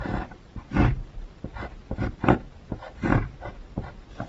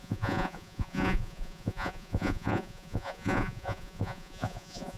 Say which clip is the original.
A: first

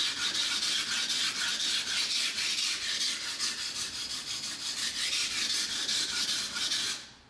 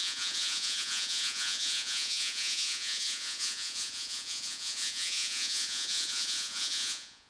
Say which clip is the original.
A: first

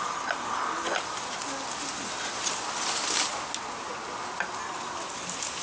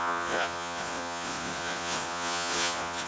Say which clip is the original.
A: first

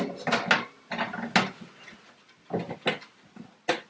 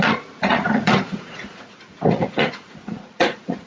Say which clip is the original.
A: first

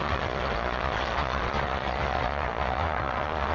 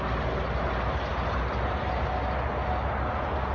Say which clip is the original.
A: second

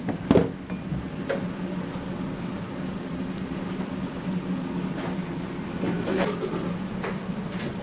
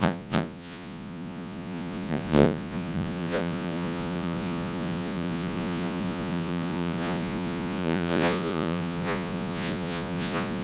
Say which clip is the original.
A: first